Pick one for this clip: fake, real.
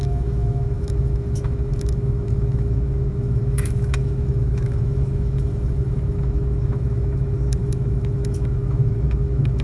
fake